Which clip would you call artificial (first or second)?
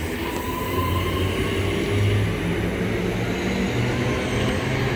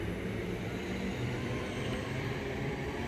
second